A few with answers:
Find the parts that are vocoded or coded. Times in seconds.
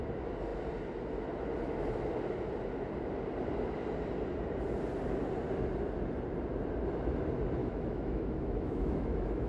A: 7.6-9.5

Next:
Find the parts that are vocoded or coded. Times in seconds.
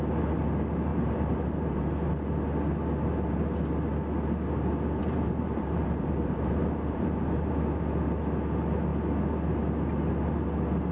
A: 0.9-1.8; 5.0-7.5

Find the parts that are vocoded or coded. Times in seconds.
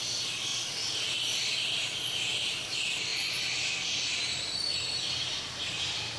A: none